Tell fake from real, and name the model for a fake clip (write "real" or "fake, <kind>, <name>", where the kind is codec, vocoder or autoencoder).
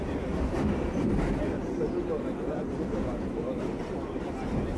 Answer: real